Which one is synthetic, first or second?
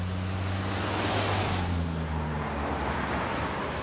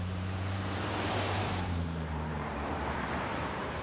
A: second